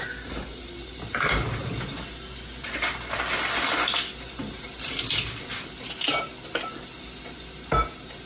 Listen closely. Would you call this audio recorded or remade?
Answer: recorded